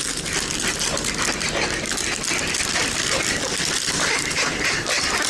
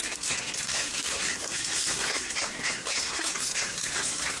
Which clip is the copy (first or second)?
second